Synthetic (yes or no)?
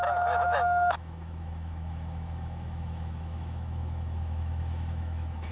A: yes